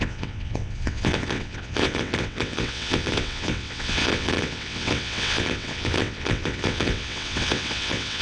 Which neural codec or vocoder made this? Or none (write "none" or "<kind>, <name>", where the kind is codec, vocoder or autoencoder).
vocoder, WaveNeXt